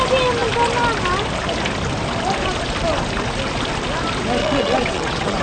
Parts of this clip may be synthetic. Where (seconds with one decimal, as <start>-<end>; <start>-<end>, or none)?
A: 4.4-5.4